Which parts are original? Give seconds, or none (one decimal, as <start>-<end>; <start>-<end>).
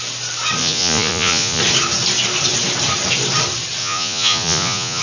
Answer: 0.0-0.6; 1.6-3.8